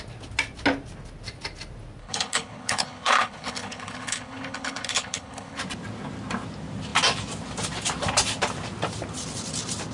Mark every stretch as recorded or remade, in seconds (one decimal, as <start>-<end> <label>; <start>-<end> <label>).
0.0-2.0 recorded; 2.0-5.6 remade; 5.6-9.9 recorded